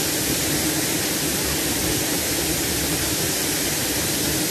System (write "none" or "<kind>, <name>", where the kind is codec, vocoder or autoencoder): none